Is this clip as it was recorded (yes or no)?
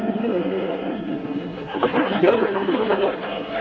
no